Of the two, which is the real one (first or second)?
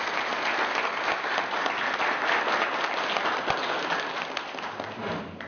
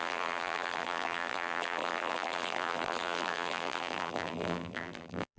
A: first